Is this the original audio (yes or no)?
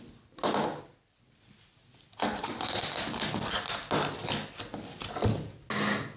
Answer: yes